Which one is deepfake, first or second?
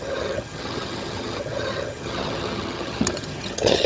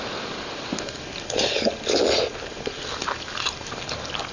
first